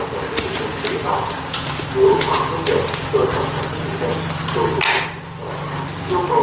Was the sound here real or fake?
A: real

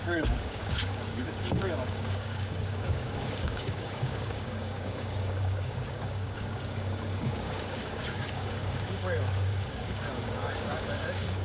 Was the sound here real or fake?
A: fake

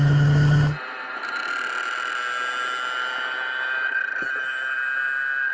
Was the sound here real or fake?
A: real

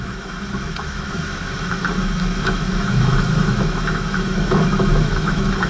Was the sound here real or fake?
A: fake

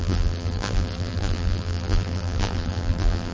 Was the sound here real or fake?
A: fake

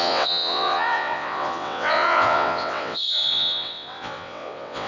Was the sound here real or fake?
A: fake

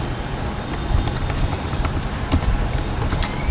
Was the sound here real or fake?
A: real